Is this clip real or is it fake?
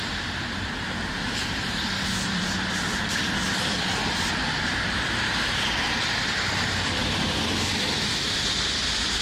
fake